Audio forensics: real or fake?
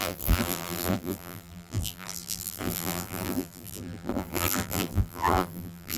fake